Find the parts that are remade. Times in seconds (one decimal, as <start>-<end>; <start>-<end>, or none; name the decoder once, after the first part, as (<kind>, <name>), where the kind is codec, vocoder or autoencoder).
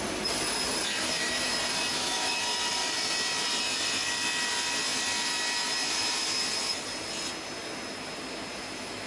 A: 0.8-1.5 (autoencoder, DAC-VAE); 1.9-2.4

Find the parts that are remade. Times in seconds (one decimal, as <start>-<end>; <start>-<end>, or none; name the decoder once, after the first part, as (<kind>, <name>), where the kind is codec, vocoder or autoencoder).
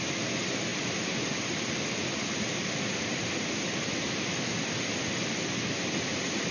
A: none